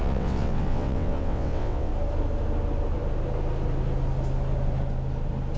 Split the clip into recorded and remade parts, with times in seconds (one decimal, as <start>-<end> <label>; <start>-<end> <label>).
0.0-1.9 remade; 1.9-5.6 recorded